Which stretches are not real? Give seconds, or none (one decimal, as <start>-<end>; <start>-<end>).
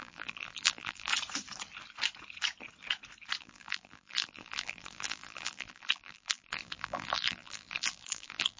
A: 0.0-1.1; 3.4-8.6